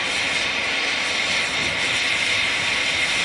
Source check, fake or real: real